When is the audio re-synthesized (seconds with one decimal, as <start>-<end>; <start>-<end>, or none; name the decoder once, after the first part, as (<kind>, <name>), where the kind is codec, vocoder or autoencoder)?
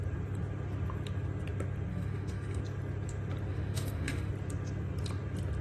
1.9-2.6 (autoencoder, DAC-VAE); 3.5-4.3